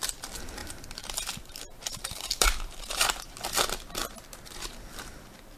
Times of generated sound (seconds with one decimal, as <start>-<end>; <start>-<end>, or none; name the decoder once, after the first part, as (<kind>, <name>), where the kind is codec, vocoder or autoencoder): 0.6-3.3 (vocoder, BigVGAN v2)